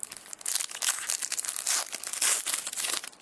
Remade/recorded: recorded